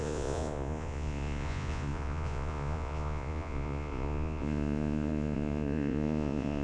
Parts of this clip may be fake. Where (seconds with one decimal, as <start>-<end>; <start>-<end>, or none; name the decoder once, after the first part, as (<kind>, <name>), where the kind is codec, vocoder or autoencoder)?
0.0-6.6 (vocoder, Vocos)